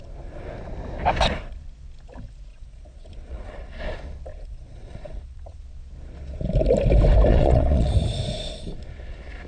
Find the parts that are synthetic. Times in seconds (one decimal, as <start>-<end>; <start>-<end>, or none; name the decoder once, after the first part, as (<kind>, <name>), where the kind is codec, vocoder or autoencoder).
2.5-3.8 (vocoder, Vocos); 4.3-5.6; 7.3-7.9